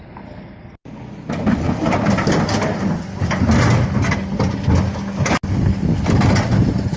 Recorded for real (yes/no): yes